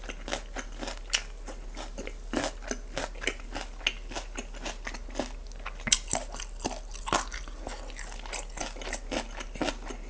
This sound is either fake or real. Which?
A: real